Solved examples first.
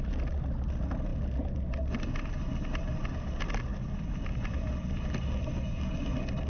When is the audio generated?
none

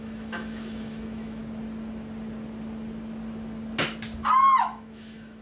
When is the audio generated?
0.0-1.4 (autoencoder, DAC-VAE); 4.6-5.4